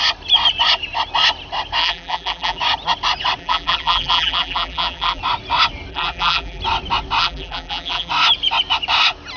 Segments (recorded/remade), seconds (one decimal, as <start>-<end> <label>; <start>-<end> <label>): 0.0-1.8 recorded; 1.8-2.6 remade; 2.6-3.4 recorded; 3.4-5.2 remade; 5.2-5.9 recorded; 5.9-6.6 remade; 6.6-7.2 recorded; 7.2-8.1 remade; 8.1-9.4 recorded